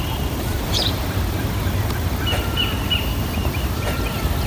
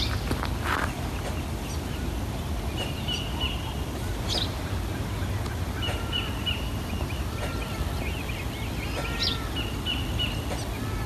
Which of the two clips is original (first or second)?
second